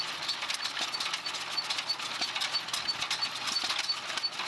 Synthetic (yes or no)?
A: no